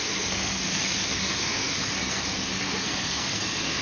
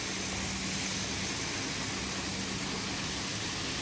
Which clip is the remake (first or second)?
first